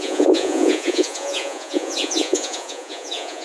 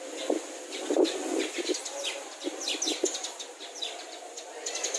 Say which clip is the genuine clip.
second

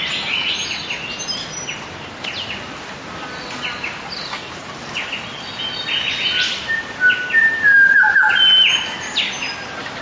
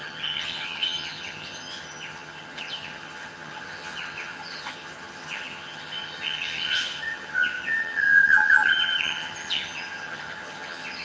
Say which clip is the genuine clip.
first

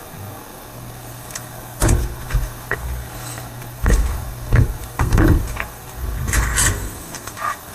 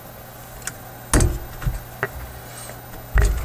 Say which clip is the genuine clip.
second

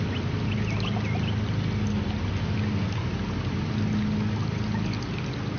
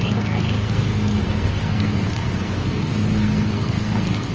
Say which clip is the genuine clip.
first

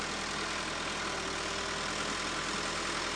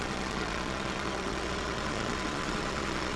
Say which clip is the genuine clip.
first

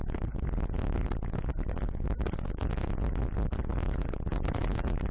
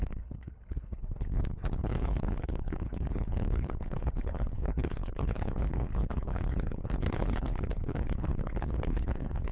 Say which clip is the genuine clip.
first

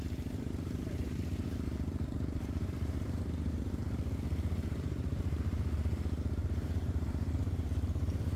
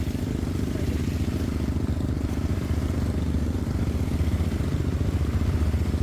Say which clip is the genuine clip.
second